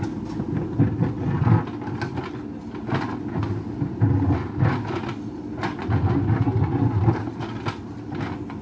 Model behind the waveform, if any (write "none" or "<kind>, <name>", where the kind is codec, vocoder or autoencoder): none